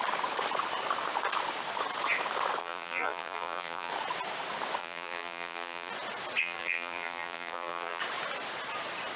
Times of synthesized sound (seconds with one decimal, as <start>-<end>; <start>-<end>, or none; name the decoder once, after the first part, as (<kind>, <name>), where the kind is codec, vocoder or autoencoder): 2.6-3.9 (vocoder, BigVGAN v2); 4.8-5.9; 6.4-8.0